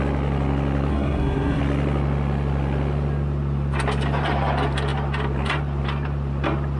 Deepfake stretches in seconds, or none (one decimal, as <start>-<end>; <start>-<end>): 0.9-1.6